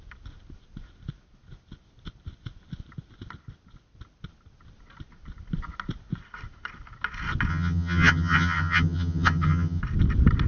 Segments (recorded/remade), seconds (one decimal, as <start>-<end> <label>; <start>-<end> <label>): 0.0-7.5 recorded; 7.5-9.8 remade; 9.8-10.5 recorded